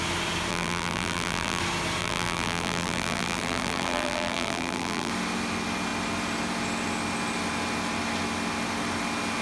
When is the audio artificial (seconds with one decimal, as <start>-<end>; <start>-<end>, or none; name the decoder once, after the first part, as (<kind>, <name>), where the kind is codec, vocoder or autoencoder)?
0.5-1.6 (vocoder, BigVGAN v2); 2.0-5.1